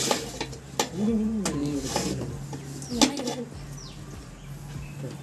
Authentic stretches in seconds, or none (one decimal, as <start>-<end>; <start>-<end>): 0.0-1.6; 2.2-5.2